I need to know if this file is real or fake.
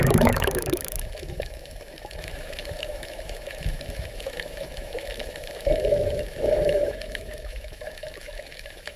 fake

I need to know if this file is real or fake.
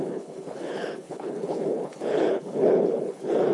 fake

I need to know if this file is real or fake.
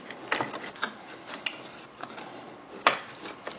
real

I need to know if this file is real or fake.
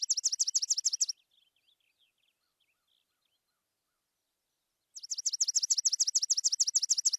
real